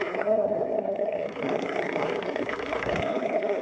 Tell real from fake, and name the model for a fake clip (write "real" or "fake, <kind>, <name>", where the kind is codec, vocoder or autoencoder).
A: fake, codec, SNAC